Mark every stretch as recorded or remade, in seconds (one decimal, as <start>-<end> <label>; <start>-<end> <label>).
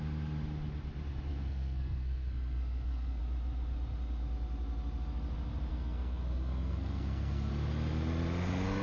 0.0-1.3 recorded; 1.3-3.2 remade; 3.2-5.7 recorded; 5.7-7.5 remade; 7.5-8.8 recorded